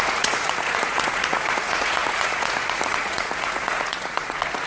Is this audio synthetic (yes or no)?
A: yes